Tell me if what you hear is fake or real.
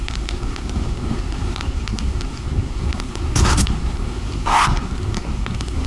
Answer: fake